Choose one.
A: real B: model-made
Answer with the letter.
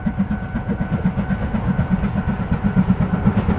A